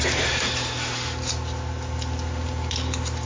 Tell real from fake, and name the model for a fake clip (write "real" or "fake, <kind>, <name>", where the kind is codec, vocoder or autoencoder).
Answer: real